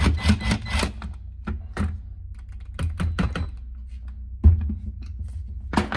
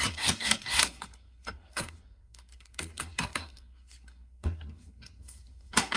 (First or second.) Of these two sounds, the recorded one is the first